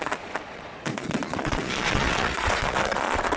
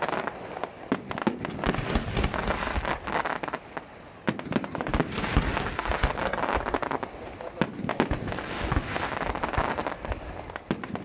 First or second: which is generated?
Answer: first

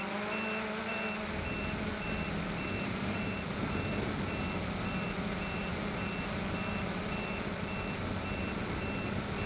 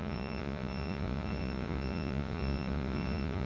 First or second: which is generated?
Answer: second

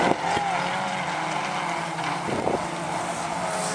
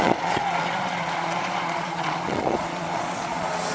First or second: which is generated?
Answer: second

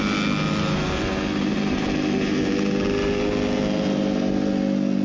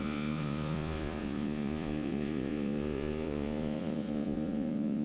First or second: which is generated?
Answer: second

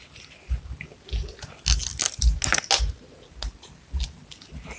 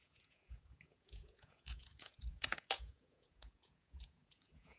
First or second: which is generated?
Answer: second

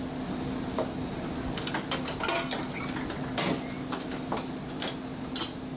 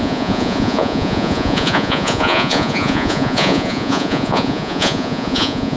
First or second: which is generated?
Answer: second